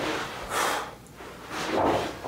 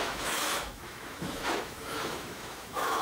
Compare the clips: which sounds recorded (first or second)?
first